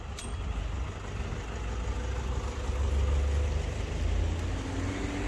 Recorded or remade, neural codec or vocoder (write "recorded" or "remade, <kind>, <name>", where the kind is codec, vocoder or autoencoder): recorded